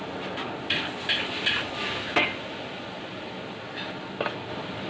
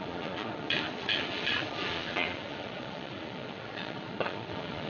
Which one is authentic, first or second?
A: first